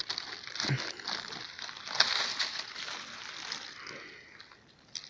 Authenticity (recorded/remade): recorded